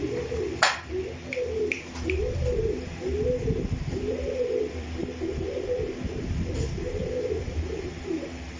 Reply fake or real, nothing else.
fake